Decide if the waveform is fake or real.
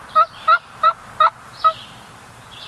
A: fake